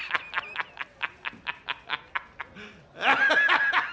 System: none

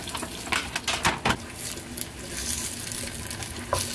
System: none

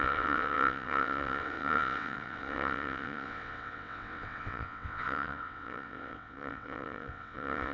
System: vocoder, WaveNeXt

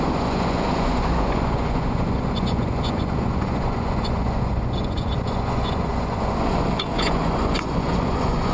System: vocoder, Vocos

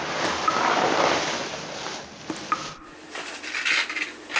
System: none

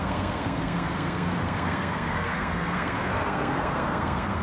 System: codec, SNAC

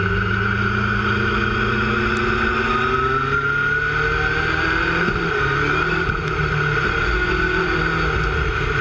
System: none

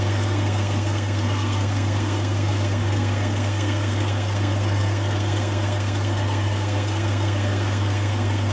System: codec, SNAC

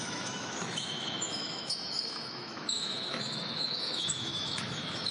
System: autoencoder, DAC-VAE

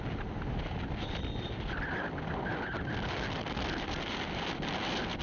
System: none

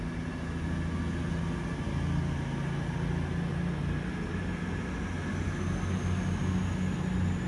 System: none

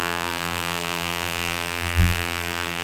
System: vocoder, BigVGAN v2